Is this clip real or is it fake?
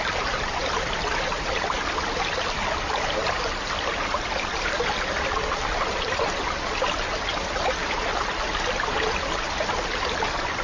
real